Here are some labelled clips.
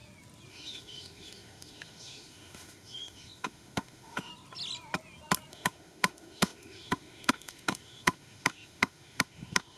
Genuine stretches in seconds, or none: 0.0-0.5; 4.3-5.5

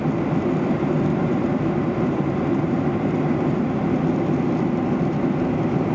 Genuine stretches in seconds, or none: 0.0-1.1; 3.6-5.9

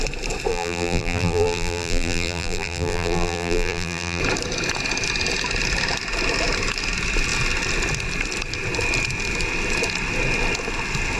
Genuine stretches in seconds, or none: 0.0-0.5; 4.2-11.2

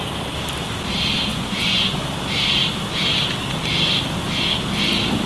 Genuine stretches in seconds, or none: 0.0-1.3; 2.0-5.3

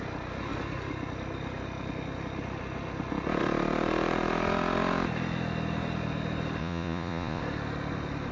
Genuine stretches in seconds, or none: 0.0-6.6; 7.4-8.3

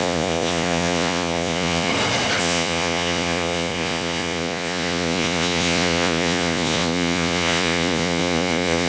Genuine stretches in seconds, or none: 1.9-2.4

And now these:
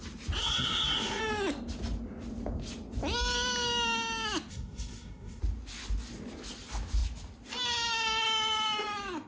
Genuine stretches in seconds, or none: 0.0-0.4; 1.2-4.5; 5.4-9.3

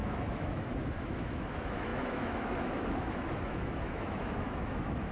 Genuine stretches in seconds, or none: none